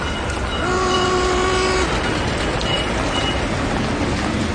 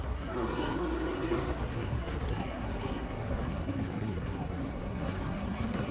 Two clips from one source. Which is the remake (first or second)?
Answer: second